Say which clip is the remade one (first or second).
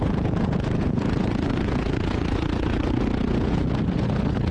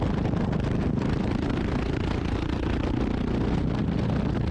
first